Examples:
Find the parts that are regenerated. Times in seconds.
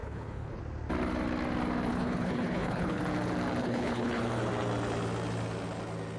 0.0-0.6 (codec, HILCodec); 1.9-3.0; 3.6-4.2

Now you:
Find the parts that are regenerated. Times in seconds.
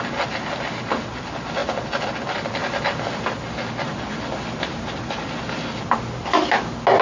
none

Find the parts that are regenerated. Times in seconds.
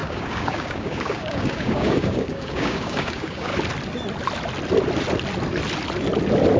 0.0-3.5 (codec, DAC)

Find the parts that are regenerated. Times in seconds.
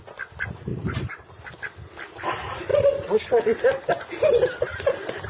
0.7-1.5 (vocoder, BigVGAN v2)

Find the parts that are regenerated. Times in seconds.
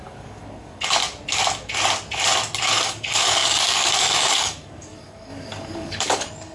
0.0-1.0 (codec, DAC); 2.6-6.5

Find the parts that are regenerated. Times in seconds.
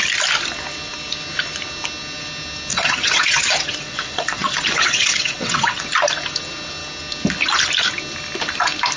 2.7-5.8 (vocoder, WaveNeXt)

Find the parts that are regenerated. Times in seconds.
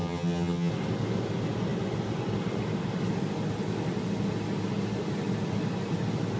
0.0-0.7 (vocoder, HiFi-GAN)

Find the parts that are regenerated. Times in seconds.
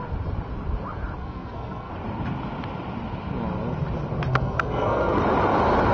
1.2-1.9 (codec, SNAC); 4.3-5.2